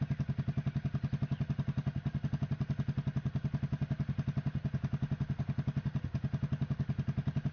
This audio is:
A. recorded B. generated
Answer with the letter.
A